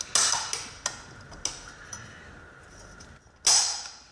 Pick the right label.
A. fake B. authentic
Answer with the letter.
B